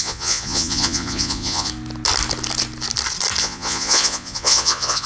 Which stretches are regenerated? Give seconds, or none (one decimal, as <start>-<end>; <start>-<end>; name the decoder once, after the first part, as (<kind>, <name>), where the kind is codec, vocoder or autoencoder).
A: 0.0-1.7 (vocoder, Vocos); 3.4-5.1